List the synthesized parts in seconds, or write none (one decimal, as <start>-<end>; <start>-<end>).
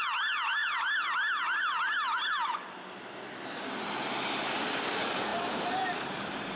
5.3-6.6